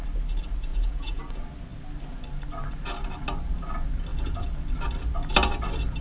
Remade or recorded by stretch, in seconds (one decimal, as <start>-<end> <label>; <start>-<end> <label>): 0.0-0.7 recorded; 0.7-1.2 remade; 1.2-6.0 recorded